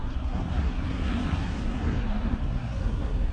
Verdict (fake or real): fake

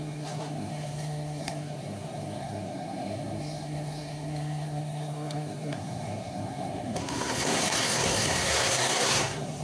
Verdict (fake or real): fake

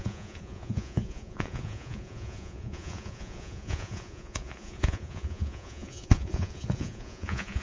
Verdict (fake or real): fake